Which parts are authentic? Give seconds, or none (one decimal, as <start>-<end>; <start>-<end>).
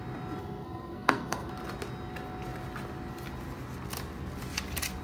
0.0-0.4; 1.5-5.0